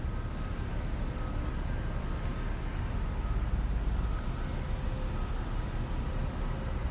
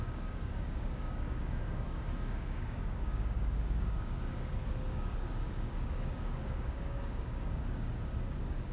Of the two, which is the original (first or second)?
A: first